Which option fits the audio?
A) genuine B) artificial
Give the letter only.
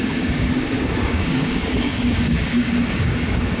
B